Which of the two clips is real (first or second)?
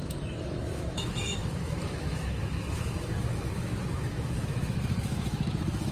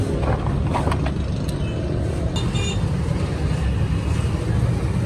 second